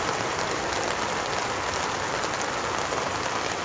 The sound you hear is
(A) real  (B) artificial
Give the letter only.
A